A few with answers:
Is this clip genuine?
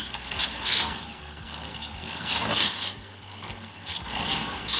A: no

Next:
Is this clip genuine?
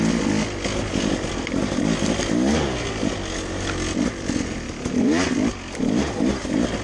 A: yes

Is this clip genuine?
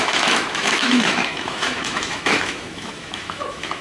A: no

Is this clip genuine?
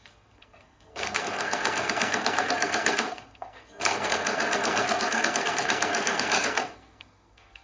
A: no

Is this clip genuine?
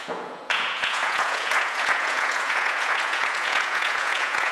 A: no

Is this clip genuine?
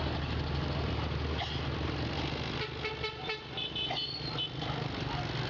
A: yes